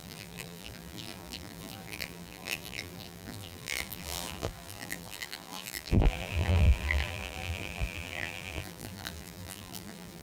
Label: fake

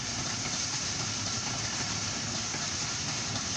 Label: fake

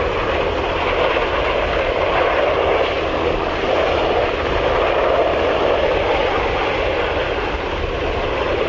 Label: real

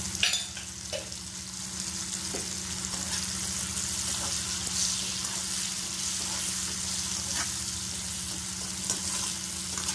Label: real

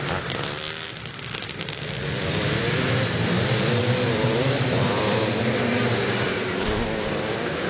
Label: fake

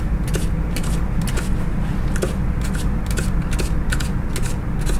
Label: real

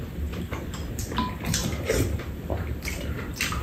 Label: fake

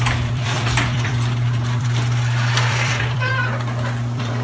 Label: fake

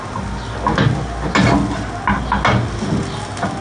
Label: real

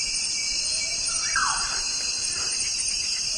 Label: fake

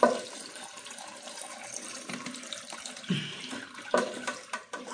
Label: fake